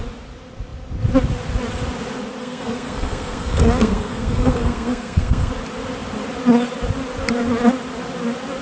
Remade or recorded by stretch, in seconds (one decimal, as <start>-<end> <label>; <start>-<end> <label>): 0.0-2.4 recorded; 2.4-5.5 remade; 5.5-8.6 recorded